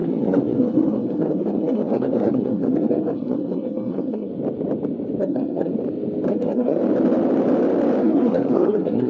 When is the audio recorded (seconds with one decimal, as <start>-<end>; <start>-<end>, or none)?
4.3-5.2; 5.7-6.3; 6.8-8.0